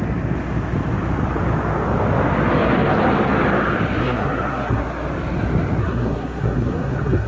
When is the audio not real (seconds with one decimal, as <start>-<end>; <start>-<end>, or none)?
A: 4.0-4.8; 5.8-7.3